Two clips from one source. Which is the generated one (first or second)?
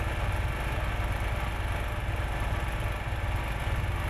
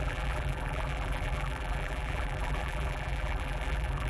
second